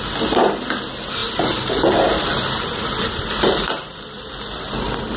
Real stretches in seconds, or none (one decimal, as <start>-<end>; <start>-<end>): 0.0-1.2; 4.3-5.2